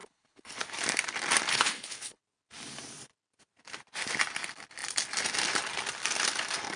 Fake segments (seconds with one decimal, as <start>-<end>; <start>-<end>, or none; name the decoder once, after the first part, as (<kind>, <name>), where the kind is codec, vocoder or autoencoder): 0.0-0.6 (codec, HILCodec); 1.5-2.2